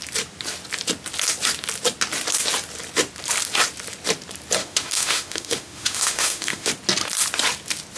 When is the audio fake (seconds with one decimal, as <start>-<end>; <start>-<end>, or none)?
4.6-6.7